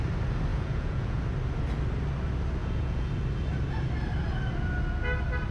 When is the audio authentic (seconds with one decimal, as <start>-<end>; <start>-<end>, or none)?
0.0-0.5; 1.2-2.6; 3.1-5.5